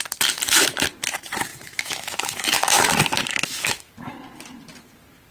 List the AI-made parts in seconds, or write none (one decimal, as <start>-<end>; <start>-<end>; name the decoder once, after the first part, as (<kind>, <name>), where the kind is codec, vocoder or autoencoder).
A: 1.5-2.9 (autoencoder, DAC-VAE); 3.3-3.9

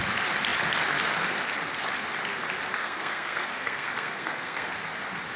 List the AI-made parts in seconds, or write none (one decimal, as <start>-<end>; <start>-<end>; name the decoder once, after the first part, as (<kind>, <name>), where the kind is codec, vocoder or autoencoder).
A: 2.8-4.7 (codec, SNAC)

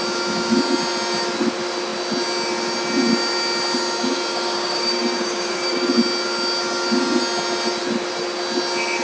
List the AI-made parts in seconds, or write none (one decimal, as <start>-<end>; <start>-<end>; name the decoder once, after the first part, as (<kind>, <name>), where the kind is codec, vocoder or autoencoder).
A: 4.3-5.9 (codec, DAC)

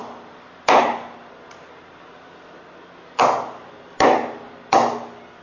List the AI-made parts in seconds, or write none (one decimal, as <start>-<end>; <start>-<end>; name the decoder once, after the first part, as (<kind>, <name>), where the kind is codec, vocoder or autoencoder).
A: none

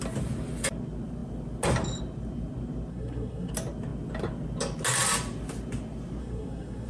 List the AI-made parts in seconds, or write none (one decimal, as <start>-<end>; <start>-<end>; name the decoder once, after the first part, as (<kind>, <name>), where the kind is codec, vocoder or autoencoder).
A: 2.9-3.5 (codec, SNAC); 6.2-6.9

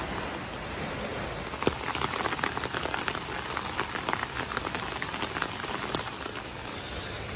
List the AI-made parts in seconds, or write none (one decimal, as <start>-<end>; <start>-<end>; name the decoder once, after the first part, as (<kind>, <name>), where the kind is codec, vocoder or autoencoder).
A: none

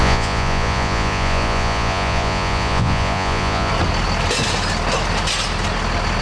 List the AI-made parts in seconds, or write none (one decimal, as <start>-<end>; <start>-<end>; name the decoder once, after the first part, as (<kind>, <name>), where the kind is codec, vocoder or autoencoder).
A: 0.0-3.7 (vocoder, Vocos)